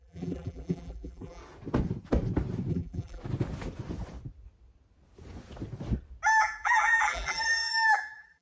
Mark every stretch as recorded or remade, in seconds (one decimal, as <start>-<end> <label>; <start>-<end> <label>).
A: 0.0-1.4 remade; 1.4-2.7 recorded; 2.7-3.2 remade; 3.2-6.3 recorded; 6.3-8.4 remade